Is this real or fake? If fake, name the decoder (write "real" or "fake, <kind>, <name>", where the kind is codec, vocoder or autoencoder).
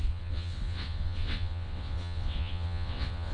fake, vocoder, WaveNeXt